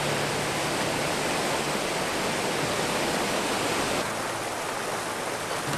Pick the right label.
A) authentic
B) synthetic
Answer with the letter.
A